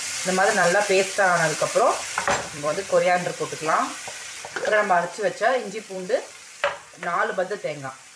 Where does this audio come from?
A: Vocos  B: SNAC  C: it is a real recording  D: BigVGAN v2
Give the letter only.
D